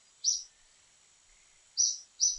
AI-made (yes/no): no